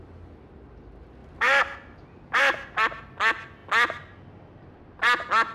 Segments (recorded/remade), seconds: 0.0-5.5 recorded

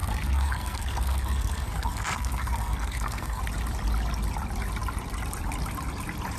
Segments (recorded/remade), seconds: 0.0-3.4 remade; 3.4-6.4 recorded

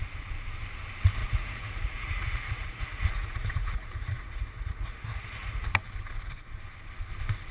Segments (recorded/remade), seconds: 0.0-1.2 recorded; 1.2-5.7 remade; 5.7-7.5 recorded

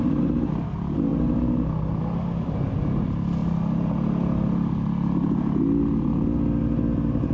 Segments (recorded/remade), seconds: 0.0-7.3 recorded